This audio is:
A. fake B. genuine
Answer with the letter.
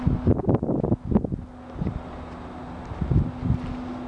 B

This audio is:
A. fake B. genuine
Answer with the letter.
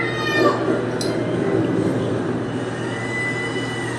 B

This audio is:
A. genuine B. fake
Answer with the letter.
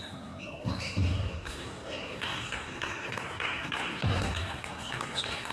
B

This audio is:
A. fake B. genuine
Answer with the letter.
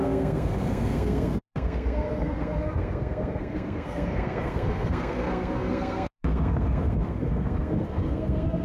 A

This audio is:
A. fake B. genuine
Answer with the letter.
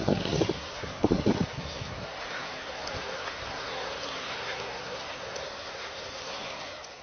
A